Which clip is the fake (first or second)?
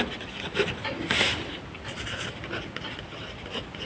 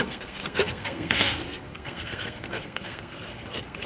second